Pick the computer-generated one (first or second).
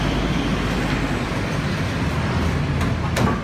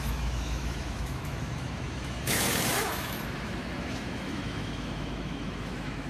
second